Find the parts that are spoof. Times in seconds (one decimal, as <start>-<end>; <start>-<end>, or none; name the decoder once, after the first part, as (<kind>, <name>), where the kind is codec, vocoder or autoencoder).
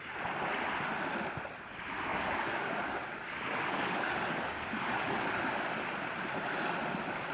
2.1-5.9 (codec, DAC)